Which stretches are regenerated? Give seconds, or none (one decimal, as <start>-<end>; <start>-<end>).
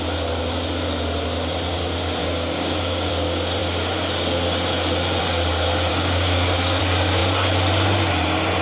2.2-3.1; 5.9-6.8